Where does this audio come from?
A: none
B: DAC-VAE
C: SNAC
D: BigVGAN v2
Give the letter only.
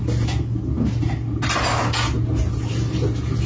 A